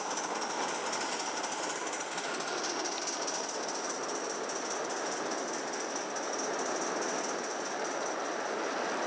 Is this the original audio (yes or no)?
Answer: yes